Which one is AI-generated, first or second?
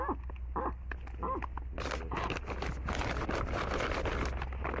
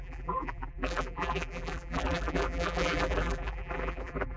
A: second